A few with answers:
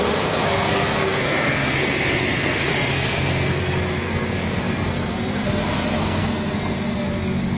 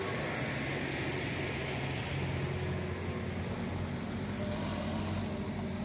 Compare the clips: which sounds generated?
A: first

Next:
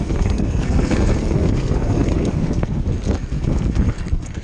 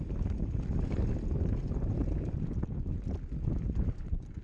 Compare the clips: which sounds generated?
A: first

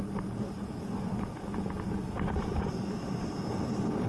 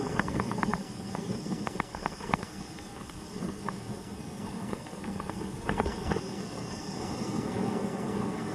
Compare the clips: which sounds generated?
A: second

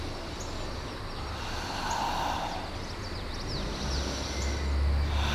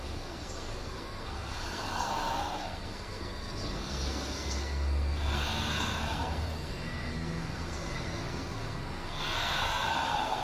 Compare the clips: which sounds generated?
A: second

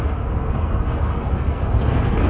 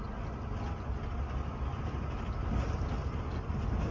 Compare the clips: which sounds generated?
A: first